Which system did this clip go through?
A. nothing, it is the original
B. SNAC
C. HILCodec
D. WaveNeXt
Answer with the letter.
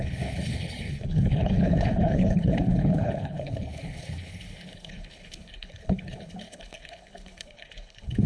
C